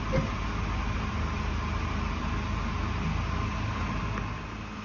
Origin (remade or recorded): recorded